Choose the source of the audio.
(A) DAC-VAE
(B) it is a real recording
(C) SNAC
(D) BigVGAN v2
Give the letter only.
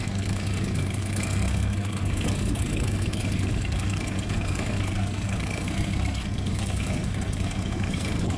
C